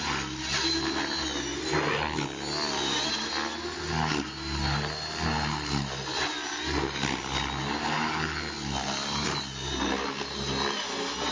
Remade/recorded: recorded